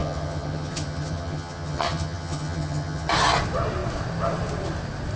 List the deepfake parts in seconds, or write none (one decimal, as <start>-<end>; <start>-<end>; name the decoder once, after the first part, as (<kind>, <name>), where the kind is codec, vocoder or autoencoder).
0.0-3.1 (vocoder, HiFi-GAN)